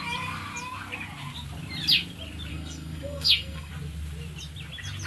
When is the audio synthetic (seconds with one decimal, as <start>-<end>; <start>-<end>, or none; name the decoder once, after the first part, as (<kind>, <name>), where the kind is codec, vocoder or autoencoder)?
2.5-3.7 (codec, SNAC)